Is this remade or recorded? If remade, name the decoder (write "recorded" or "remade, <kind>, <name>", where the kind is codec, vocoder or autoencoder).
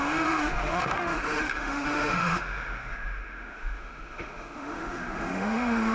remade, autoencoder, DAC-VAE